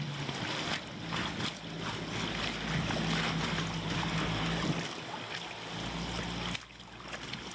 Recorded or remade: recorded